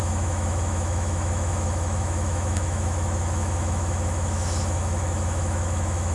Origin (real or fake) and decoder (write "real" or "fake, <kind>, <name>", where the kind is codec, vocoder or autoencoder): fake, autoencoder, DAC-VAE